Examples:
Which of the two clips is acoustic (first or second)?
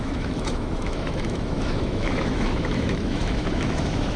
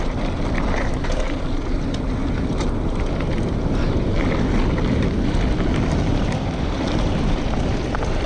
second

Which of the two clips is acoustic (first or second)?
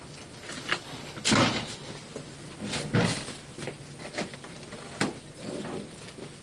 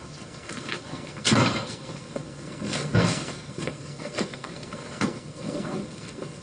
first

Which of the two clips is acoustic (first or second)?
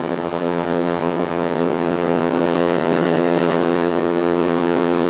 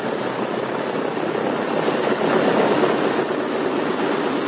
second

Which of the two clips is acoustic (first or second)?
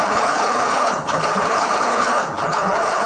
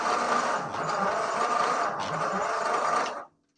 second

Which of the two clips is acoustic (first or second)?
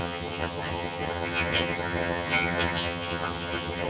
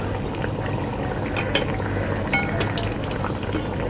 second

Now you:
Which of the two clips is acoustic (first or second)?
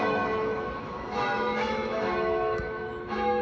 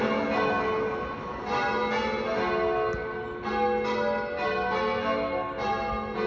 second